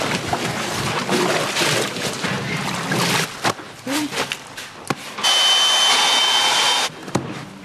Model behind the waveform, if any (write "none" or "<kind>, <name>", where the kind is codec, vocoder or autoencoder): none